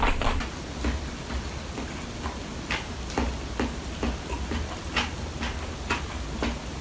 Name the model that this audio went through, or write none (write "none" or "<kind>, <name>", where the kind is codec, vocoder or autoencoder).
none